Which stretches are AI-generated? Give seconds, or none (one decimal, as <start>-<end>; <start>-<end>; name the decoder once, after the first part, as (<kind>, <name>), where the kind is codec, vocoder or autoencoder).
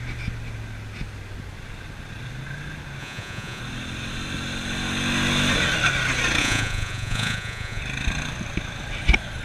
3.0-3.6 (vocoder, Vocos); 6.4-7.8